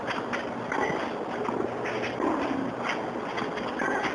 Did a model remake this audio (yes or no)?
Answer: no